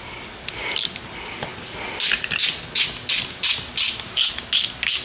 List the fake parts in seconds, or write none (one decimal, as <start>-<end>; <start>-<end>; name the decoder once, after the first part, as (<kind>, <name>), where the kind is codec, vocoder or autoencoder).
none